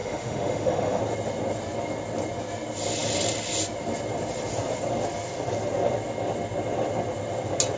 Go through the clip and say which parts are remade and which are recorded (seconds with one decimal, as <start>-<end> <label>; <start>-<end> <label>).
0.0-1.0 remade; 1.0-7.8 recorded